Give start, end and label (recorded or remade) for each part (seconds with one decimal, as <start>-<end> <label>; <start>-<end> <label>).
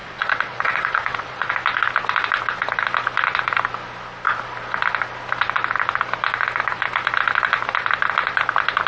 0.0-1.5 remade; 1.5-8.9 recorded